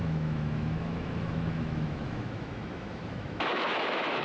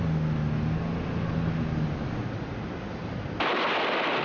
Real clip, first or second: second